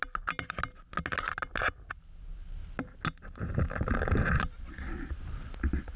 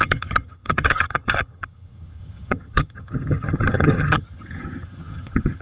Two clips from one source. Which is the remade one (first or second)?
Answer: second